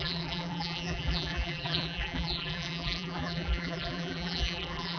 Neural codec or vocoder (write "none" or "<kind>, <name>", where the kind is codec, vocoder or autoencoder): vocoder, BigVGAN v2